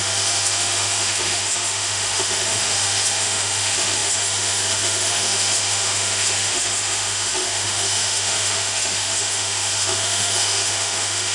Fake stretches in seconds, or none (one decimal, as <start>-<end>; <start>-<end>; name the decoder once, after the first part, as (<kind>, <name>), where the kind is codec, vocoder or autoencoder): 0.0-11.3 (autoencoder, DAC-VAE)